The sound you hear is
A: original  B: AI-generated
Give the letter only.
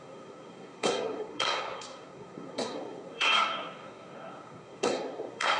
B